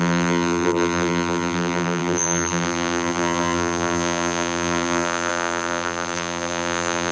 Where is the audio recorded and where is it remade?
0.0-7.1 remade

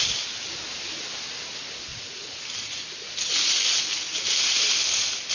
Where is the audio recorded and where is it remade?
0.0-1.9 recorded; 1.9-2.4 remade; 2.4-5.3 recorded

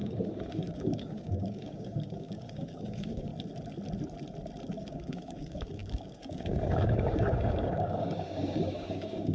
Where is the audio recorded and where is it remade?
0.0-3.3 remade; 3.3-4.8 recorded; 4.8-9.3 remade